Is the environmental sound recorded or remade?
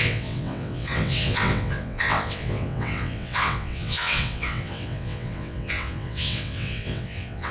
remade